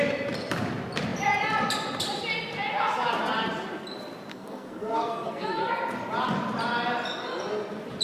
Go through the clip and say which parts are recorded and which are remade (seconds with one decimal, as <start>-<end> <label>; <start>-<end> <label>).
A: 0.0-4.3 recorded; 4.3-5.7 remade; 5.7-8.0 recorded